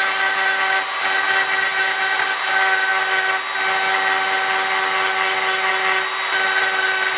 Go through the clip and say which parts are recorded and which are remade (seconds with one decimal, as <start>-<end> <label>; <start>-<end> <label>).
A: 0.0-7.2 recorded